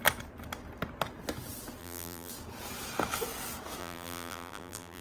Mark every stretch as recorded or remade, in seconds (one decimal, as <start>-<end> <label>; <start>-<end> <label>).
0.0-1.8 recorded; 1.8-2.3 remade; 2.3-3.8 recorded; 3.8-5.0 remade

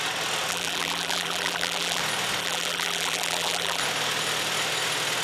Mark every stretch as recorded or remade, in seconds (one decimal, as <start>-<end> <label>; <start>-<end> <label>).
0.0-0.5 recorded; 0.5-2.0 remade; 2.0-2.4 recorded; 2.4-3.8 remade; 3.8-5.2 recorded